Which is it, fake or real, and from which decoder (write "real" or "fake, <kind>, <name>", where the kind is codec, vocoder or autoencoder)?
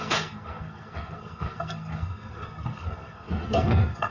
fake, codec, SNAC